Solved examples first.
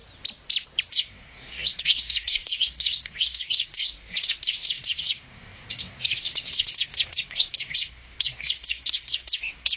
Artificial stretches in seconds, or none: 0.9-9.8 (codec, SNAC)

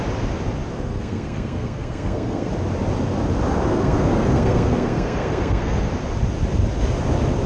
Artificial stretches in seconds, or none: 0.7-2.5 (codec, SNAC); 3.7-5.9

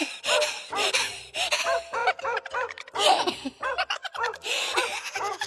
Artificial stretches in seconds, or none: none

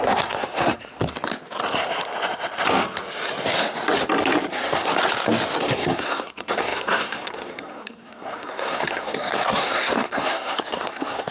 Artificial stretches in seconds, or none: 0.0-1.0 (codec, SNAC); 4.5-4.9; 5.6-11.3

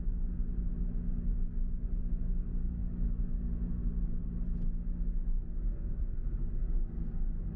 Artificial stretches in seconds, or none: none

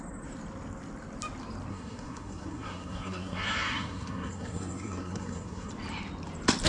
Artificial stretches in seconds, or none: 1.7-5.7 (codec, SNAC)

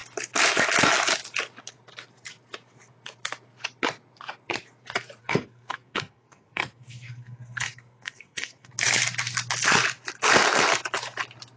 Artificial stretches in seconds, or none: 5.2-8.7 (codec, SNAC)